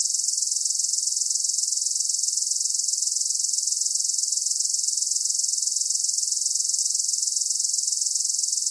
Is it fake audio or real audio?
fake